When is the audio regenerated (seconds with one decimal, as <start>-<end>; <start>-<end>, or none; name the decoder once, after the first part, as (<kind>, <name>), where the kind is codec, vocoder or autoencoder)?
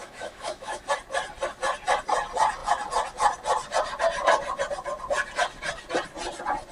0.0-0.8 (autoencoder, DAC-VAE)